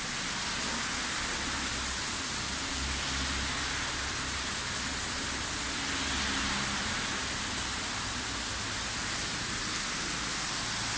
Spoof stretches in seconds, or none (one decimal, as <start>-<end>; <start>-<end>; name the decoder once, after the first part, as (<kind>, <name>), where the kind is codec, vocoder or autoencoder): none